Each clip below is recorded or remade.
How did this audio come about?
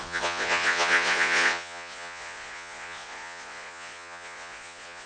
remade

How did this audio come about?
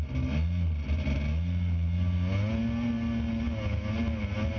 recorded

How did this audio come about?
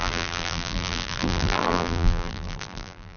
remade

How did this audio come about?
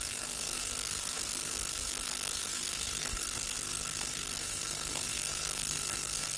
remade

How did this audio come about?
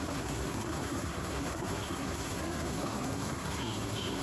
remade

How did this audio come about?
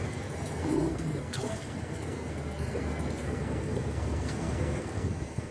remade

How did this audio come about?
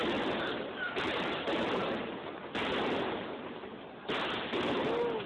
recorded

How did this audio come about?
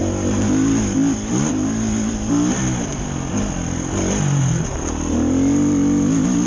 recorded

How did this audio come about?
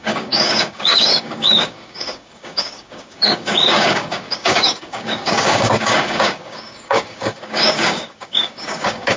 remade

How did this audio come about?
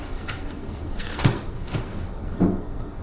remade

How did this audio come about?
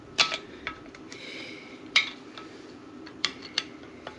remade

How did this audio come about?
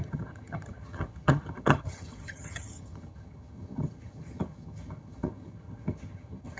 remade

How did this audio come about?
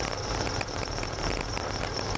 recorded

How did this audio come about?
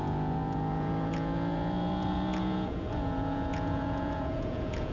remade